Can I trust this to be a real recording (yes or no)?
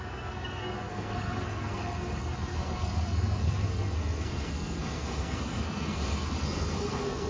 no